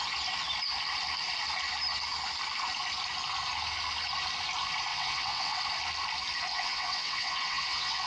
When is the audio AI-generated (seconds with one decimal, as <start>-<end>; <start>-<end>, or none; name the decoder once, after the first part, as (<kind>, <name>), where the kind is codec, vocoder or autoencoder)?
4.9-5.6 (vocoder, WaveNeXt); 6.5-8.1